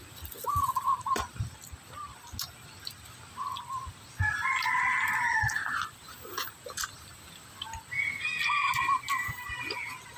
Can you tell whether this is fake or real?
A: real